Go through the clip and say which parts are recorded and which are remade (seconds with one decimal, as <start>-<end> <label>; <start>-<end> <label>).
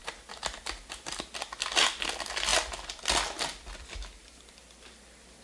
0.0-5.4 recorded